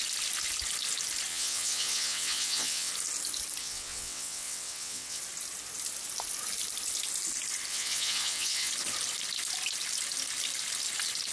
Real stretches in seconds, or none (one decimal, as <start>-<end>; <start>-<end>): 0.0-1.3; 2.9-3.6; 5.2-7.7; 8.7-11.3